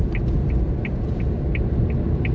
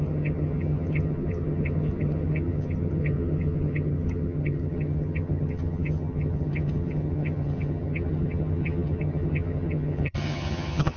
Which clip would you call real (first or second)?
first